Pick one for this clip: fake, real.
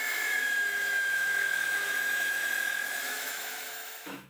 fake